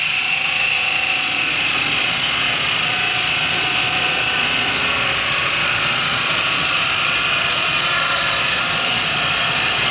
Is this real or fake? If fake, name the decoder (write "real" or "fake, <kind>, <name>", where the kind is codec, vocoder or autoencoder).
fake, vocoder, Vocos